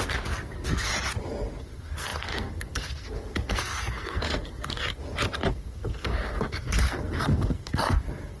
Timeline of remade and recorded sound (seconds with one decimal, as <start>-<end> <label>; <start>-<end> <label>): 0.0-0.9 remade; 0.9-1.6 recorded; 1.6-5.0 remade; 5.0-5.5 recorded; 5.5-8.4 remade